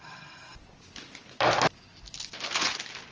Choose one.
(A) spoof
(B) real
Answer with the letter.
B